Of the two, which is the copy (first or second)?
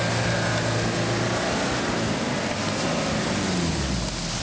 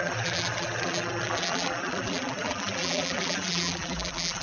second